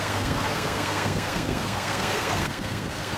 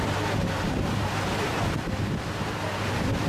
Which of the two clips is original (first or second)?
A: second